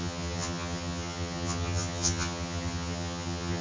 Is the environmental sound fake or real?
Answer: fake